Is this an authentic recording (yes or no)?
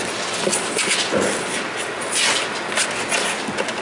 yes